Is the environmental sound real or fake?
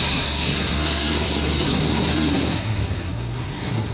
fake